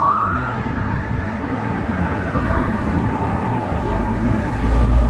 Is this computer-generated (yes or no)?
yes